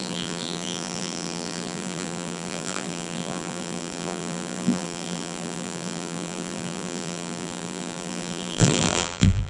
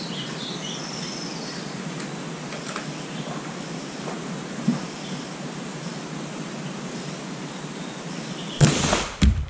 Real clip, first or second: second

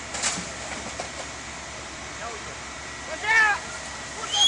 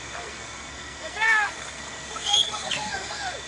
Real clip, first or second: first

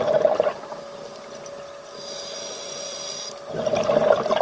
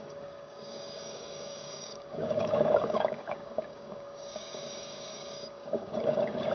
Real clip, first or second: first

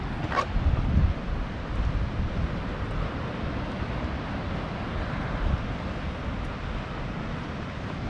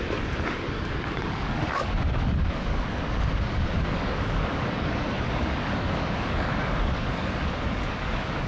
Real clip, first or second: first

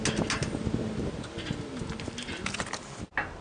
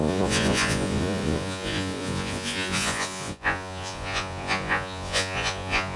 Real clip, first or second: first